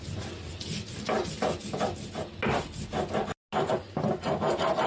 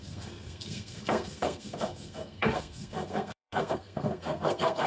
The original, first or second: first